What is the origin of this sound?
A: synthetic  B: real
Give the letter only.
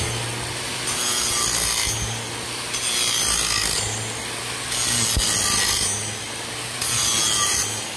B